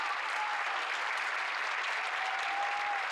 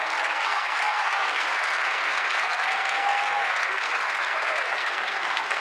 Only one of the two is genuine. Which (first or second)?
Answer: first